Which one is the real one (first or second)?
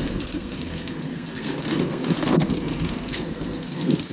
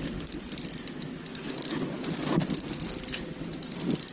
second